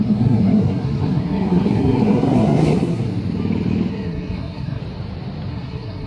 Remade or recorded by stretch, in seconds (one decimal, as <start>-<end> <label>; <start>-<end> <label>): 0.0-3.1 remade; 3.1-3.9 recorded; 3.9-4.8 remade; 4.8-5.5 recorded; 5.5-6.1 remade